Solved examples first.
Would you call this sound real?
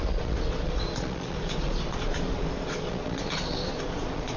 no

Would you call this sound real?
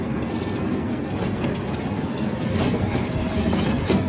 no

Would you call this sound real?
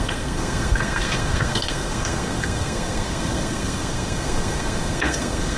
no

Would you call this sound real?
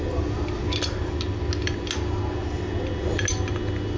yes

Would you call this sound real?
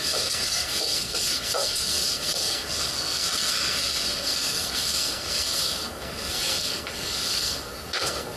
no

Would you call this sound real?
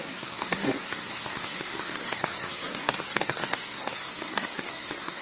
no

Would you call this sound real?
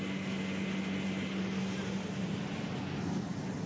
yes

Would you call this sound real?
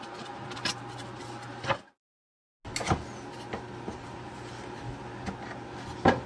yes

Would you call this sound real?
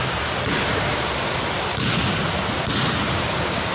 yes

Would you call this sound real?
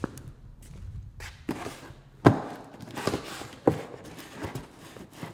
yes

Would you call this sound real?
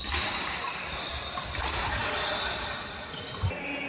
yes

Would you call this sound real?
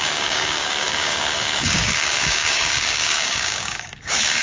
no